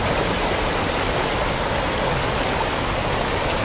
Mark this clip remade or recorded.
recorded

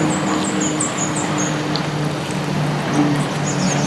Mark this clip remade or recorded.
recorded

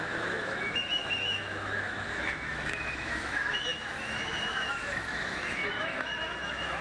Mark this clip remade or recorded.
remade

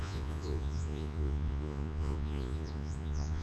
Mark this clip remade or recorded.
remade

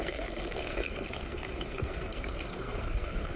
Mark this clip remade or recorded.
remade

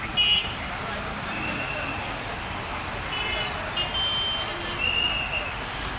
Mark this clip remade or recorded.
recorded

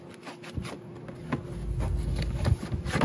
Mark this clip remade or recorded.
recorded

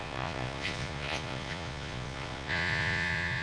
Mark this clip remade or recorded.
remade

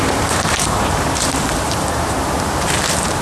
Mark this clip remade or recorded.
remade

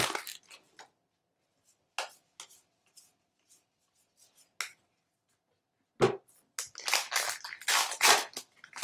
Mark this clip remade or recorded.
recorded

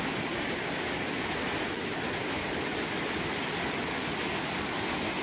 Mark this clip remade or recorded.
recorded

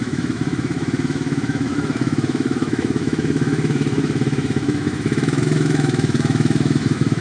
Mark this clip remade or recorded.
remade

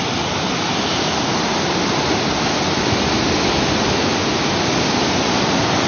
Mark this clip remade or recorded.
recorded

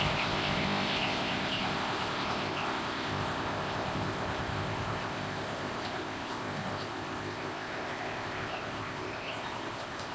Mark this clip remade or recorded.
remade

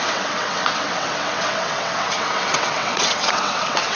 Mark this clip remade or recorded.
remade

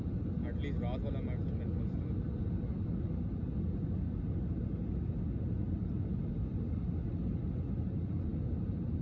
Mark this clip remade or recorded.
recorded